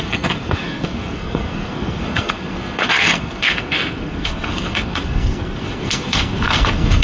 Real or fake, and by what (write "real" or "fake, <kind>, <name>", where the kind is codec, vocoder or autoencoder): fake, codec, SNAC